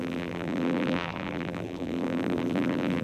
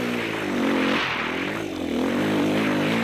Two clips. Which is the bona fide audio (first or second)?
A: second